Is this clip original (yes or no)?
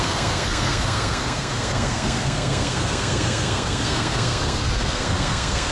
no